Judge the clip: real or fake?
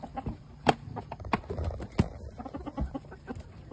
real